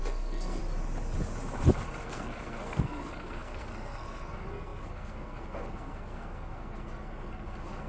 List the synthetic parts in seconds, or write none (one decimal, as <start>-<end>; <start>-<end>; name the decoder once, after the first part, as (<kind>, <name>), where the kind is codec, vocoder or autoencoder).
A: 0.0-0.6 (codec, SNAC); 2.0-7.9